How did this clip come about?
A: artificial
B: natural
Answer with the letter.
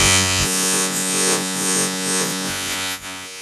A